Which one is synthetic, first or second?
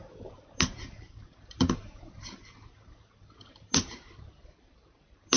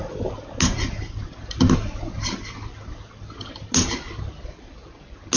first